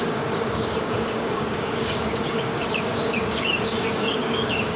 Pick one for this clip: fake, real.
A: fake